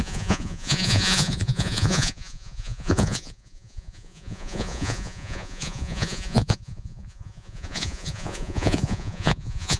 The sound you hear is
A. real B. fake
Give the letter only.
B